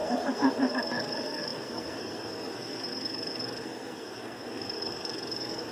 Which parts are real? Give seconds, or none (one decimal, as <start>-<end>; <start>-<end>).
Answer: none